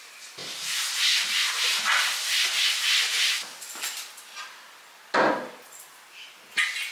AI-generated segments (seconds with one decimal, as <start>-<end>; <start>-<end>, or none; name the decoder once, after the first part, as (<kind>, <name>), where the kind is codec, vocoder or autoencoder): none